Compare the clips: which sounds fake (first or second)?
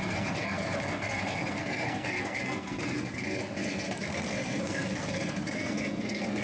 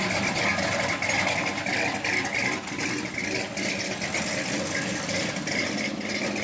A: first